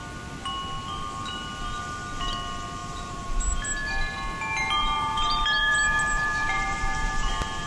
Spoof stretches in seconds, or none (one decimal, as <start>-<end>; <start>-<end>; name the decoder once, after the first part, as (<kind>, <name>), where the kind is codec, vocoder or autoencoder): 2.8-3.4 (vocoder, BigVGAN v2); 4.6-7.3